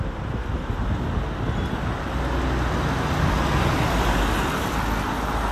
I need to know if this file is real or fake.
real